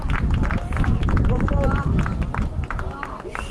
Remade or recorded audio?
recorded